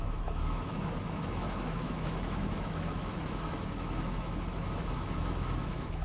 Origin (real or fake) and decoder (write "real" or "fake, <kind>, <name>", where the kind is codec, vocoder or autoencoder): fake, autoencoder, DAC-VAE